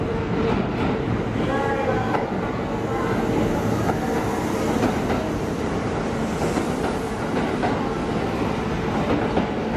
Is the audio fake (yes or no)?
no